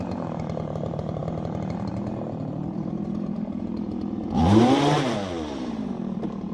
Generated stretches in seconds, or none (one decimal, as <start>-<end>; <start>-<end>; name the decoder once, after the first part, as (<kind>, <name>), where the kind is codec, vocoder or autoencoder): 0.0-6.5 (vocoder, BigVGAN v2)